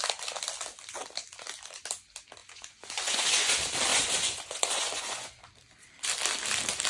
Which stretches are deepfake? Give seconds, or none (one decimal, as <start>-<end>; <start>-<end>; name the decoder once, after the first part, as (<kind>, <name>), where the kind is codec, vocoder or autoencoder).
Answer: 2.4-3.5 (vocoder, Vocos); 3.9-5.3

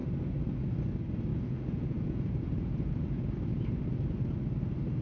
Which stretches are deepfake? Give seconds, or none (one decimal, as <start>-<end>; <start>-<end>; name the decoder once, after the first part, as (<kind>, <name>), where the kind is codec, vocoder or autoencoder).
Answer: 1.3-3.3 (vocoder, Vocos)